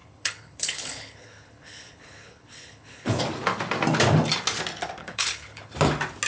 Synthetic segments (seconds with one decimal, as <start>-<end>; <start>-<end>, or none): 0.0-3.2; 5.0-5.7